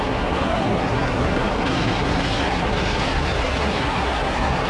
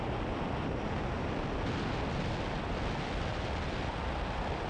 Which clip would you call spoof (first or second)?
first